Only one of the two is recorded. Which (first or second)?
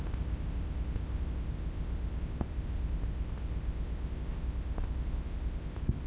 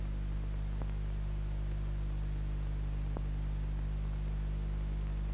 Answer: second